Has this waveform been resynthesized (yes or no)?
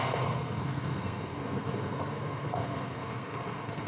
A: yes